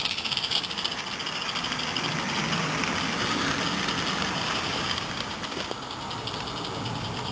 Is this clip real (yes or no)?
yes